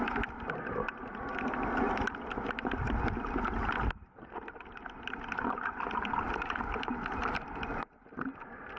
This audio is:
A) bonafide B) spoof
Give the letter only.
A